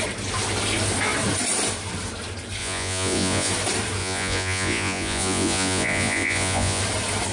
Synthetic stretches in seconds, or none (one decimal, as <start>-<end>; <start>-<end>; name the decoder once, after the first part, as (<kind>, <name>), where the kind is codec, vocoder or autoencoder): 2.6-3.5 (vocoder, Vocos); 4.0-6.8